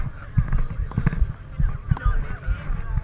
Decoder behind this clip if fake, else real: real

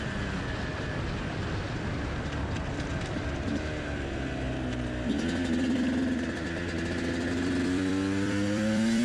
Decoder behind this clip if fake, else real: fake, vocoder, BigVGAN v2